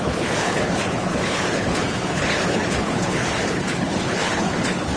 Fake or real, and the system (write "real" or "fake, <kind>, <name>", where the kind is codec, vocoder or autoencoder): fake, codec, HILCodec